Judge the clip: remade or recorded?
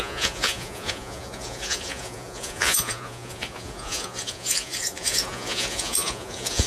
remade